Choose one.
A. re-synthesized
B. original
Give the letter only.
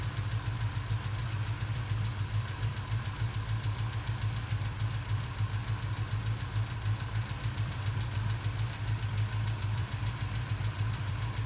A